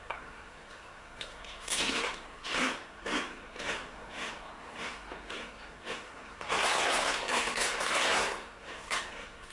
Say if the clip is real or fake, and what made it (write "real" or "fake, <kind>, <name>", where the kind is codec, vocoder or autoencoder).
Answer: fake, codec, SNAC